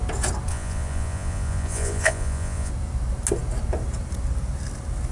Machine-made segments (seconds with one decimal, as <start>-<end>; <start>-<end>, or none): 0.5-2.7